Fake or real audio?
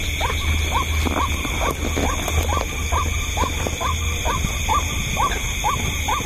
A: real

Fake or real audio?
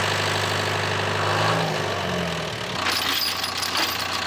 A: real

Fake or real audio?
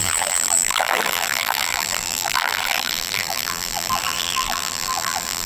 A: fake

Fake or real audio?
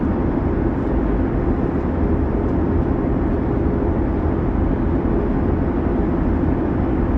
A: real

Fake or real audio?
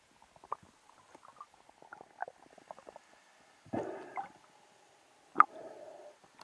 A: real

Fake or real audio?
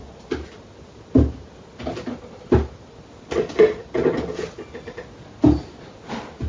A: real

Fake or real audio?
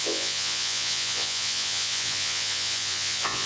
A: fake